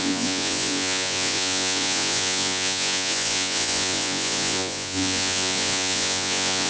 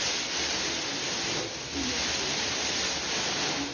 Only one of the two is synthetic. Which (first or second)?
first